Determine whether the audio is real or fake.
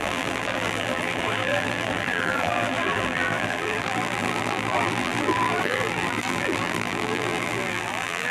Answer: fake